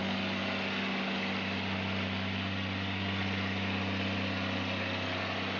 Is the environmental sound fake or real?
real